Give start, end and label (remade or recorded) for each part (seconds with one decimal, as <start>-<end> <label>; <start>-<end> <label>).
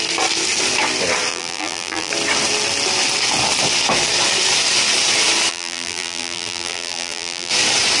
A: 0.0-1.3 recorded; 1.3-2.1 remade; 2.1-5.5 recorded; 5.5-7.5 remade; 7.5-8.0 recorded